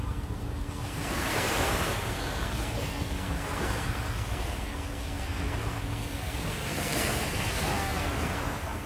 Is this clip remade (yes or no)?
yes